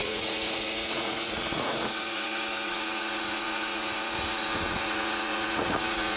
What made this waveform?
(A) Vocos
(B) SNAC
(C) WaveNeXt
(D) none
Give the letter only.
A